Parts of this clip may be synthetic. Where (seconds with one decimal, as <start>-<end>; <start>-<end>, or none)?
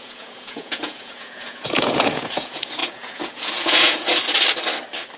0.0-4.1